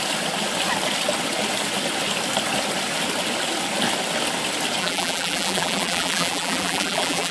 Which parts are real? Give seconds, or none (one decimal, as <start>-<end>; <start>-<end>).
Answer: 0.0-4.8